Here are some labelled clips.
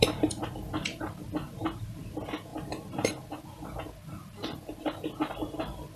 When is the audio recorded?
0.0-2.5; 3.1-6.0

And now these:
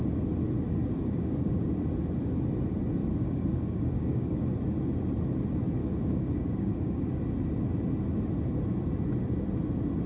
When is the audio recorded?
0.0-0.8; 1.7-3.0; 4.5-5.8; 7.1-10.1

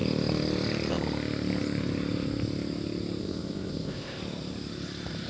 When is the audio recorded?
0.0-3.2; 4.2-5.3

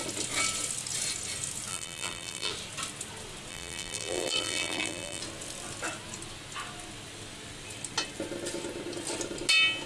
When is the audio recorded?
0.0-1.7; 2.5-3.5; 5.2-9.9